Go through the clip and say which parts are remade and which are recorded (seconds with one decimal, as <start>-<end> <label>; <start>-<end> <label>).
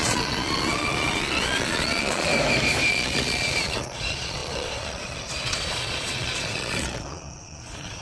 0.0-2.3 remade; 2.3-2.9 recorded; 2.9-8.0 remade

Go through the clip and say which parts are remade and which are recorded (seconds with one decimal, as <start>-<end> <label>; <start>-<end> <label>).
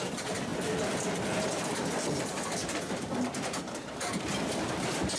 0.0-5.2 remade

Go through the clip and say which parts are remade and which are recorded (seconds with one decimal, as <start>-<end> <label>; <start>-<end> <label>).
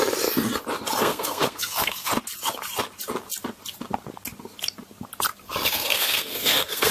0.0-1.0 recorded; 1.0-2.1 remade; 2.1-5.7 recorded; 5.7-6.9 remade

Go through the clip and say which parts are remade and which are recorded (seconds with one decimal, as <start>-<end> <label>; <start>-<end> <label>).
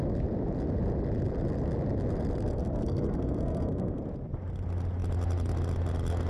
0.0-2.5 recorded; 2.5-4.0 remade; 4.0-6.3 recorded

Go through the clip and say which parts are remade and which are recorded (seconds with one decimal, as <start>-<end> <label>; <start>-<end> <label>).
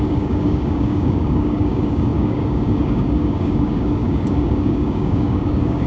0.0-5.9 remade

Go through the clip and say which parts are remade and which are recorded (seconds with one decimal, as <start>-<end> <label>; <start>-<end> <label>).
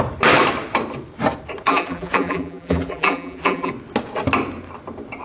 0.0-1.7 recorded; 1.7-3.7 remade; 3.7-5.2 recorded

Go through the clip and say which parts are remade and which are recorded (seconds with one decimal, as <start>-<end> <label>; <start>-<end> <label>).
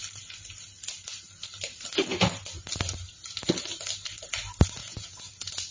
0.0-4.8 recorded; 4.8-5.3 remade; 5.3-5.7 recorded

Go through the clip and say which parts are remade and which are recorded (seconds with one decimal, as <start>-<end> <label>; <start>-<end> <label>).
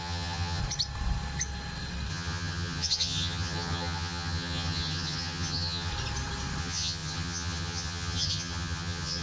0.0-0.6 remade; 0.6-2.1 recorded; 2.1-5.9 remade; 5.9-6.6 recorded; 6.6-9.2 remade